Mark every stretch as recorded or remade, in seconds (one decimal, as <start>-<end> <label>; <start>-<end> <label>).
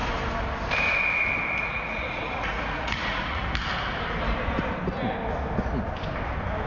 0.0-1.6 recorded; 1.6-3.4 remade; 3.4-6.7 recorded